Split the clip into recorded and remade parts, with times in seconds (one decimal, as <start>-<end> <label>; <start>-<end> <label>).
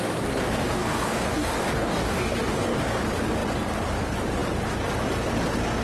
0.0-0.8 recorded; 0.8-3.0 remade; 3.0-5.8 recorded